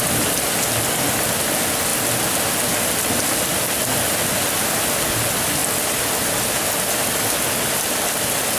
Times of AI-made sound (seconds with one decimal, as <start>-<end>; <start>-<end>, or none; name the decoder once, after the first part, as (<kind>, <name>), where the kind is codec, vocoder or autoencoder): none